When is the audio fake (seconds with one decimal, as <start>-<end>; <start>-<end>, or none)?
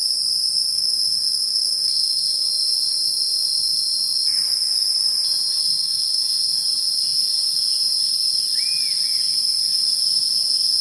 0.7-2.5; 5.6-6.2